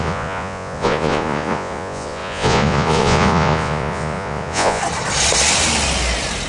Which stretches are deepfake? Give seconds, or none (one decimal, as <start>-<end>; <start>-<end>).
0.0-4.8